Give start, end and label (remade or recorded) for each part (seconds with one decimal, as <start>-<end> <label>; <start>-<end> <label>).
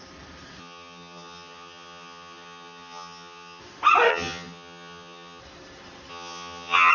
0.0-0.6 recorded; 0.6-3.6 remade; 3.6-4.1 recorded; 4.1-5.4 remade; 5.4-6.1 recorded; 6.1-6.9 remade